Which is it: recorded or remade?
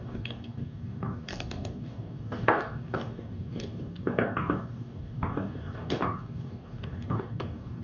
remade